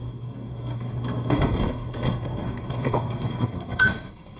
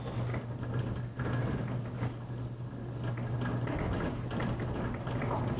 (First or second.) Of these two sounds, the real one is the second